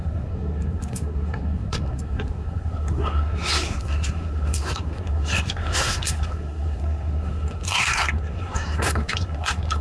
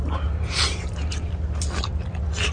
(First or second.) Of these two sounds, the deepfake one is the first